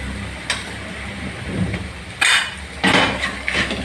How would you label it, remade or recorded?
recorded